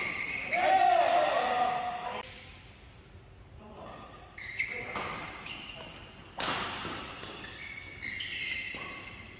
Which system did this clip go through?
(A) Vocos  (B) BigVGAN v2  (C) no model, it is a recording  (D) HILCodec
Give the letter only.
B